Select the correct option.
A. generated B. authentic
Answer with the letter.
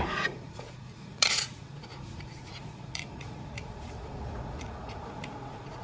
A